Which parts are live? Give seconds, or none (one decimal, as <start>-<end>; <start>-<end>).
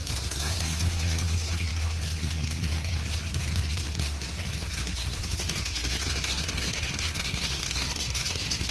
none